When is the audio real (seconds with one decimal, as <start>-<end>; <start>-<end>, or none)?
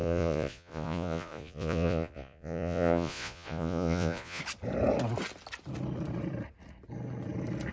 4.4-7.7